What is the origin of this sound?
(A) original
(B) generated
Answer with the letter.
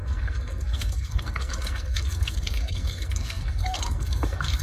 B